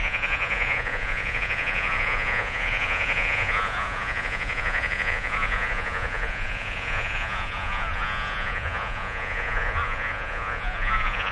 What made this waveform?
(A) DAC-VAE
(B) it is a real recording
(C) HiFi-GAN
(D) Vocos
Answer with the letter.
D